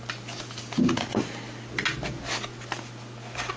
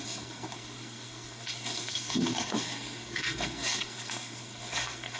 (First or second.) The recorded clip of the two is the first